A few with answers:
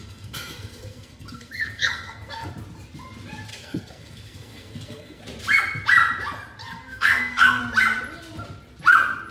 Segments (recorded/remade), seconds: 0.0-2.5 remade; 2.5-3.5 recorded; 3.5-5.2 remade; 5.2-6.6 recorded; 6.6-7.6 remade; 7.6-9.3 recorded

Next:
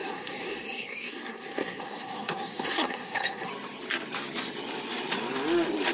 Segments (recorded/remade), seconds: 0.0-3.5 remade; 3.5-5.9 recorded